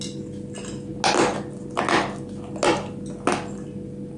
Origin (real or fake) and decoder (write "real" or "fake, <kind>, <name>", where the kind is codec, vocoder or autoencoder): real